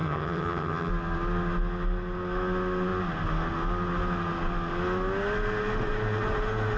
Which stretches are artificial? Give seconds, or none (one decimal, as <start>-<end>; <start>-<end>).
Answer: 0.0-0.9